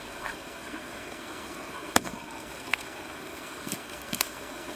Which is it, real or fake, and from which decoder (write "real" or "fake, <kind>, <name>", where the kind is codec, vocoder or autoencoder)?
fake, codec, SNAC